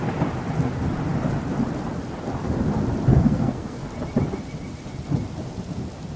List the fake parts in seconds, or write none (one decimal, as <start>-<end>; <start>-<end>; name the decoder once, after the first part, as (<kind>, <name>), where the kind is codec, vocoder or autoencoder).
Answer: 3.1-3.9 (codec, SNAC)